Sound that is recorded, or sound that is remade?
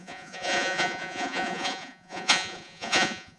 remade